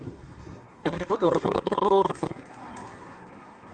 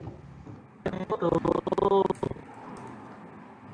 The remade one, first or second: first